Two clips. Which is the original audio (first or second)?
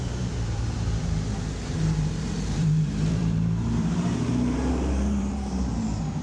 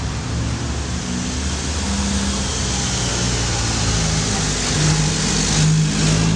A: second